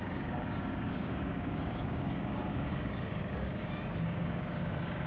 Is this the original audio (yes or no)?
no